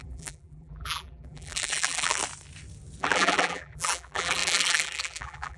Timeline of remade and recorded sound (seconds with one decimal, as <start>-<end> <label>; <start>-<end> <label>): 0.0-2.2 remade; 2.2-3.0 recorded; 3.0-5.6 remade